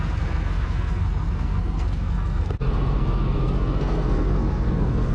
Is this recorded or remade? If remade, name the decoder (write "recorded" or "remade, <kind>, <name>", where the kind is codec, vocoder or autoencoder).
remade, codec, SNAC